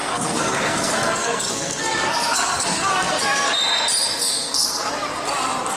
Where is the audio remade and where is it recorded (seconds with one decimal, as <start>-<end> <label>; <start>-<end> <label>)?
0.0-3.5 remade; 3.5-4.2 recorded; 4.2-4.9 remade; 4.9-5.8 recorded